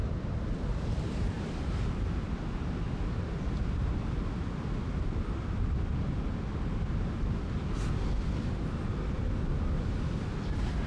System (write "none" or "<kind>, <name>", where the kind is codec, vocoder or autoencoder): none